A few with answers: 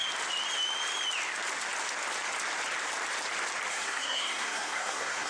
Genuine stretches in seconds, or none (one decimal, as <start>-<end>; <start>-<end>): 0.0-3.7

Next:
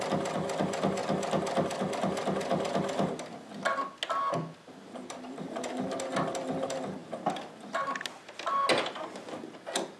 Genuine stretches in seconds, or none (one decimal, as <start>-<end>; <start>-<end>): 0.0-10.0

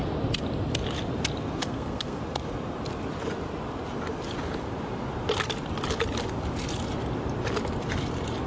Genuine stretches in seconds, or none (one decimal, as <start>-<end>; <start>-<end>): 0.0-1.6; 2.2-8.5

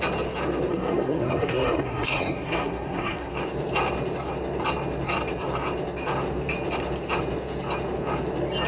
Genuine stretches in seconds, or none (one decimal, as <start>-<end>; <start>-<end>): 0.0-0.7; 3.3-8.7

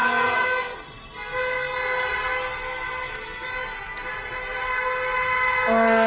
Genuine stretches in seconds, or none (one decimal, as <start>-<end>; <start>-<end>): 0.0-6.1